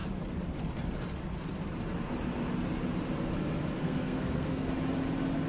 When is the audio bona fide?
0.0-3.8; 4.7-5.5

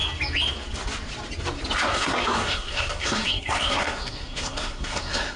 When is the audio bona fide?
0.0-1.9

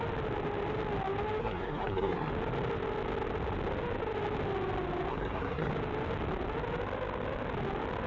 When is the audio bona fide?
0.0-1.4; 2.3-5.1; 5.7-8.1

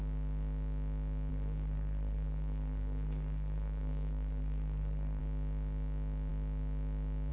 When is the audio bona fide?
0.0-1.3; 5.2-7.3

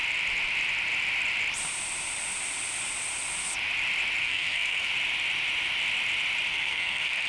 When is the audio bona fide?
0.0-4.2; 4.9-6.5

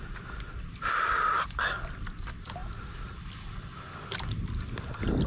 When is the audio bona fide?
0.0-5.3

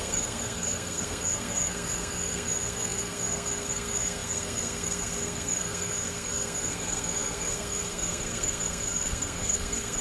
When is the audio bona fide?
none